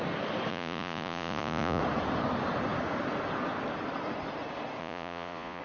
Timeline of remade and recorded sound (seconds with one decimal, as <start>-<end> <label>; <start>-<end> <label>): 0.0-0.5 recorded; 0.5-1.8 remade; 1.8-4.8 recorded; 4.8-5.6 remade